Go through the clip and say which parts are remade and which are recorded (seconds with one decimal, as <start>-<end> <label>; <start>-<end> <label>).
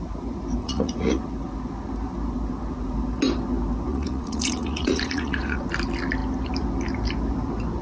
0.0-0.6 recorded; 0.6-1.2 remade; 1.2-3.9 recorded; 3.9-5.6 remade; 5.6-7.8 recorded